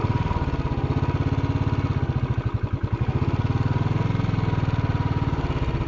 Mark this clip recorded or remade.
recorded